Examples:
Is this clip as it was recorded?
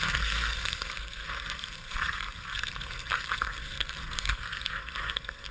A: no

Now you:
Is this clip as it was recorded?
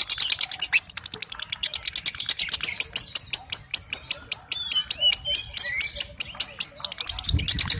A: yes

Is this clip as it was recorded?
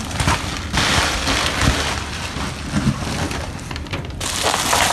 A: yes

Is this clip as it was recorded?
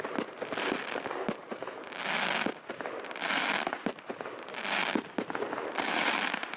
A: yes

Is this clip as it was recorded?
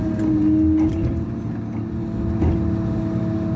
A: yes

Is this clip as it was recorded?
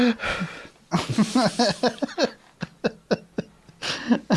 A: yes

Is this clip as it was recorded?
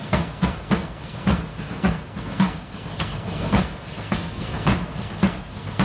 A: no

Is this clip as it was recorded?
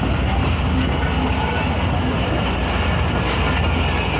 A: yes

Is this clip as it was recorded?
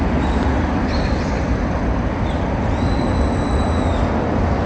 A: yes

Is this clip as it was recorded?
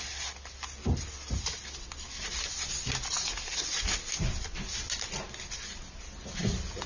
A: yes